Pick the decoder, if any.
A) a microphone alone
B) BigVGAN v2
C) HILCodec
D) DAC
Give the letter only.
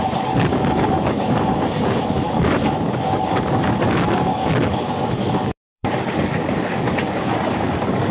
D